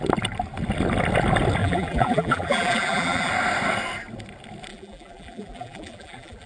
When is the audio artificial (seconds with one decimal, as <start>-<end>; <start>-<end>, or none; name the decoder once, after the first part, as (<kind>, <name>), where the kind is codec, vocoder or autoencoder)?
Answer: 1.6-3.3 (vocoder, BigVGAN v2); 4.7-6.5